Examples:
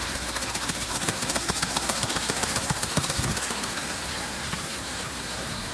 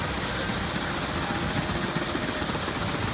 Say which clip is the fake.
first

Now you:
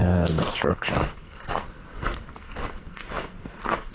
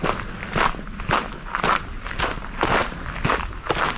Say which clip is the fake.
first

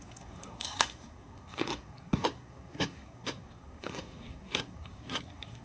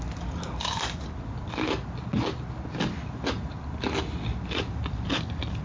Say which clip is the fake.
first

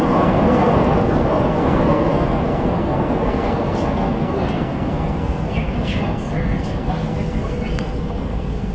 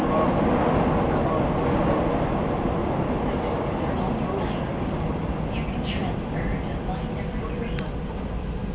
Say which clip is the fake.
first